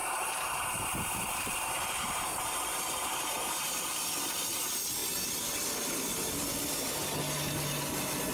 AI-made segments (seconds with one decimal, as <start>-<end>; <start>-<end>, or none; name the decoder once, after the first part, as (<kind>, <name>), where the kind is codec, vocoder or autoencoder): 0.0-3.7 (vocoder, BigVGAN v2)